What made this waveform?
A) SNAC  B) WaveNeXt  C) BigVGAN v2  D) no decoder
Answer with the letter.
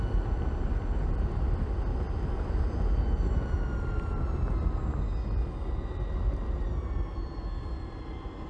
D